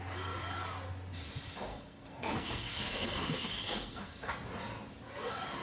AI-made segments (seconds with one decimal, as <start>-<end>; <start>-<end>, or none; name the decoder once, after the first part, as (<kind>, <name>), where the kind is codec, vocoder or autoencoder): 1.7-4.3 (codec, SNAC)